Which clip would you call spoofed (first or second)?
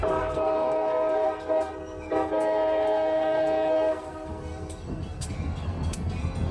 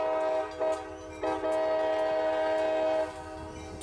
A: first